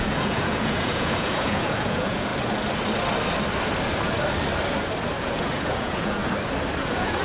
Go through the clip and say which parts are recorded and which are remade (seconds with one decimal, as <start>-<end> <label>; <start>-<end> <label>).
0.0-2.3 remade; 2.3-5.2 recorded; 5.2-6.2 remade; 6.2-6.8 recorded; 6.8-7.2 remade